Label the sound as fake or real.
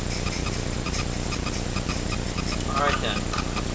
real